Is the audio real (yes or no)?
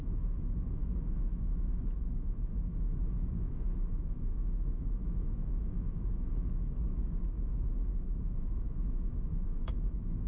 no